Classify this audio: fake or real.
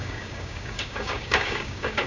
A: fake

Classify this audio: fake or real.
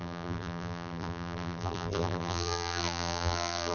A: fake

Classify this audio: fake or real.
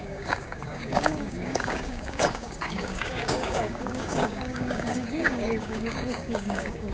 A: fake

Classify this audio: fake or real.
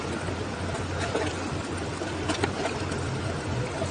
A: real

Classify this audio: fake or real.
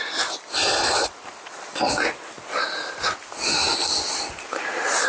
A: real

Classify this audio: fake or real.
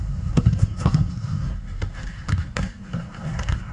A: fake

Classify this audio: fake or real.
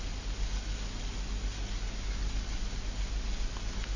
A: real